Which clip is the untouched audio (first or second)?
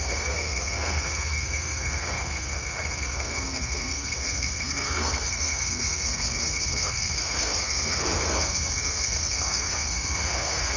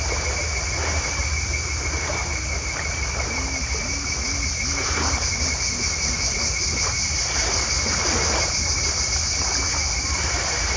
second